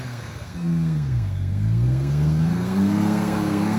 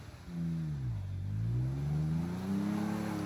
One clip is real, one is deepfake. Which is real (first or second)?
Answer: second